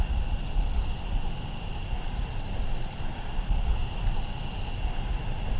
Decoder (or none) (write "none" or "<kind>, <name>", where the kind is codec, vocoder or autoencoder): none